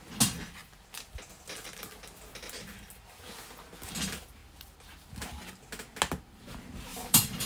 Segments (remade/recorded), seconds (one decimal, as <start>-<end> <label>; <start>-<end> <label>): 0.0-6.9 recorded; 6.9-7.5 remade